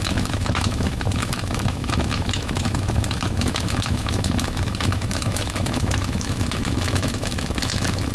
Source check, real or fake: fake